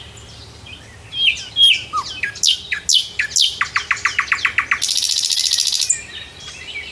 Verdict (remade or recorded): recorded